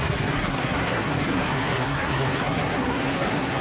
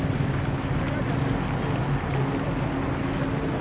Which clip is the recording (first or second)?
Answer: second